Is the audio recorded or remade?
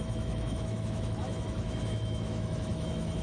remade